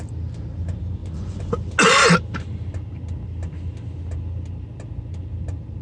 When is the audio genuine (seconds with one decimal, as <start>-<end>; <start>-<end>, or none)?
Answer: 0.0-1.0; 1.5-5.8